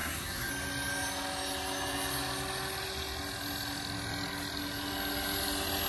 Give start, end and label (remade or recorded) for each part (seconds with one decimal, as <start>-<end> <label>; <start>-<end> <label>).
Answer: 0.0-0.5 remade; 0.5-5.9 recorded